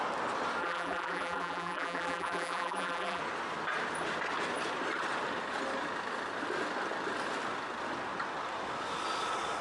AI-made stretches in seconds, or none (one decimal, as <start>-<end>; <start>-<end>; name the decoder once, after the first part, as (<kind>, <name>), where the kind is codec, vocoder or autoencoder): 0.6-3.2 (vocoder, BigVGAN v2)